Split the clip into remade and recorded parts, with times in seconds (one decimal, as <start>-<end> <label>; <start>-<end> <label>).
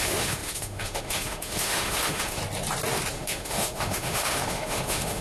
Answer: 0.0-2.4 remade; 2.4-3.1 recorded; 3.1-5.2 remade